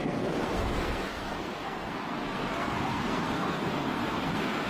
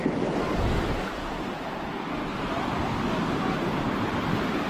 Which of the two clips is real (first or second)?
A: second